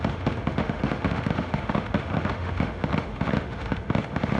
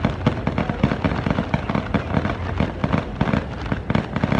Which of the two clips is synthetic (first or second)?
first